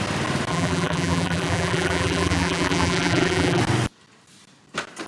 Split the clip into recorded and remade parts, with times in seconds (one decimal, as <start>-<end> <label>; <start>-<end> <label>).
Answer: 0.0-0.5 recorded; 0.5-3.6 remade; 3.6-5.1 recorded